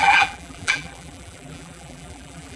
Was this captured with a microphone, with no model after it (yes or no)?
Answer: no